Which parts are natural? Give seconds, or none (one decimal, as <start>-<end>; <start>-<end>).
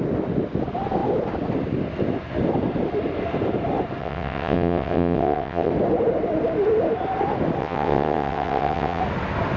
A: 0.0-4.0; 5.7-7.6; 9.0-9.6